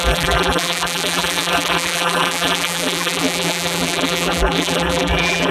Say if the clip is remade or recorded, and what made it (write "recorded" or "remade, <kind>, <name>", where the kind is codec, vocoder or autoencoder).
remade, vocoder, BigVGAN v2